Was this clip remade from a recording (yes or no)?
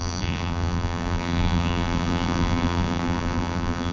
yes